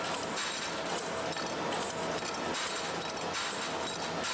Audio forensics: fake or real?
real